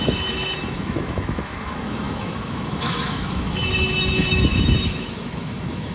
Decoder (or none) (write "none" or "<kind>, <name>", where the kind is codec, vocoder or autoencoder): autoencoder, DAC-VAE